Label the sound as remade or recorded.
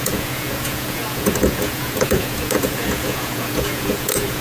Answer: remade